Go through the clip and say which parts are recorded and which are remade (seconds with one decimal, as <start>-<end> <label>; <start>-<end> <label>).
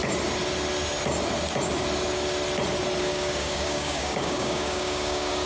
0.0-3.0 recorded; 3.0-5.5 remade